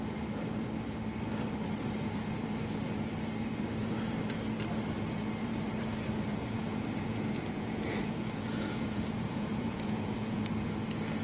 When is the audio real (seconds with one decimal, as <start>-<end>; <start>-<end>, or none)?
0.0-6.3; 10.7-11.2